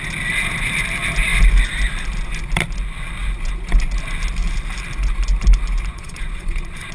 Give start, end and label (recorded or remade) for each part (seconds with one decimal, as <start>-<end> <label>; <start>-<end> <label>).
0.0-5.9 recorded; 5.9-6.9 remade